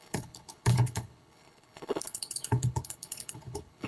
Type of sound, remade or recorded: remade